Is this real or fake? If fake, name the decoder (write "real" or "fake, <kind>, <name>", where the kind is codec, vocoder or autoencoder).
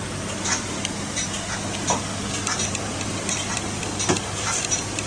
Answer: real